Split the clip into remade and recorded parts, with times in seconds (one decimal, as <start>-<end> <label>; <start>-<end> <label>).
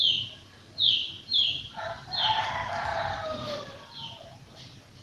0.0-1.0 recorded; 1.0-2.5 remade; 2.5-2.9 recorded; 2.9-4.6 remade; 4.6-5.0 recorded